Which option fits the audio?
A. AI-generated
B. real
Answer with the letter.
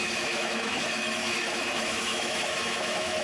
A